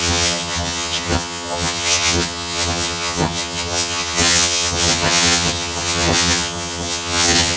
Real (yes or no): no